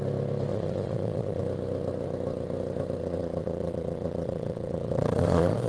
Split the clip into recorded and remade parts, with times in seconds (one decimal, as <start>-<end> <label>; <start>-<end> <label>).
0.0-0.5 recorded; 0.5-1.4 remade; 1.4-3.0 recorded; 3.0-5.7 remade